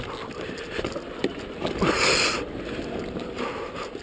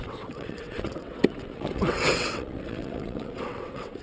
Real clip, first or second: first